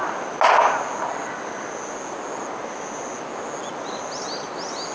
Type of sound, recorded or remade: recorded